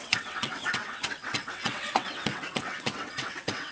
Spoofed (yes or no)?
yes